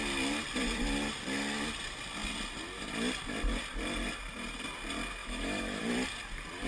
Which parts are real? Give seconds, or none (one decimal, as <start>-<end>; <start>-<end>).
0.0-5.2; 5.8-6.7